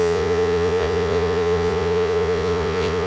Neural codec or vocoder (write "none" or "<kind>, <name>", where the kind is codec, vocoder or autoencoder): vocoder, Vocos